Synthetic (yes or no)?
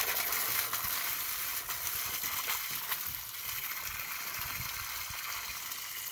no